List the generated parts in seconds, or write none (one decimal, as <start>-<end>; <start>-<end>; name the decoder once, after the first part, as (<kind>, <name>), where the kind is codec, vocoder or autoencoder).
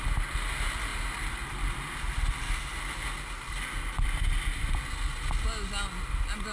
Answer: none